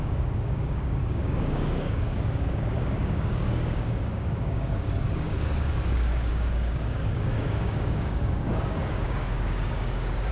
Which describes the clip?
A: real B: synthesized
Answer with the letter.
B